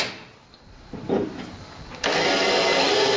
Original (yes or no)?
yes